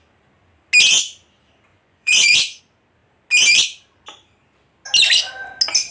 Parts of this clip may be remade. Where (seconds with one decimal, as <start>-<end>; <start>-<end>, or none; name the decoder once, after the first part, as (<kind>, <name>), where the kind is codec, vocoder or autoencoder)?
1.7-2.6 (vocoder, Vocos)